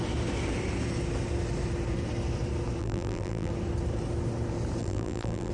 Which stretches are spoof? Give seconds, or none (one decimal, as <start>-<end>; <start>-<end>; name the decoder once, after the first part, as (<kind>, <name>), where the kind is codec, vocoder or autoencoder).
2.8-3.5 (vocoder, BigVGAN v2); 4.8-5.5